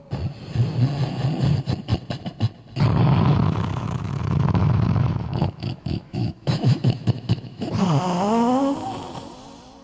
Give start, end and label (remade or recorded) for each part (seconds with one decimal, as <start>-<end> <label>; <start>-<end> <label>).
0.0-3.3 recorded; 3.3-7.7 remade; 7.7-9.8 recorded